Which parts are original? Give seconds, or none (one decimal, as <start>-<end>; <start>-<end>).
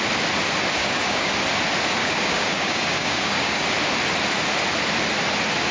0.0-0.8; 1.3-2.0; 3.6-5.7